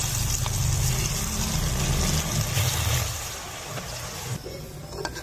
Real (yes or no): yes